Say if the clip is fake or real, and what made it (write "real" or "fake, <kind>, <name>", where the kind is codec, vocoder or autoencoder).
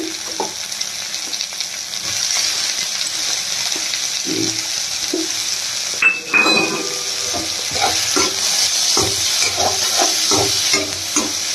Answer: real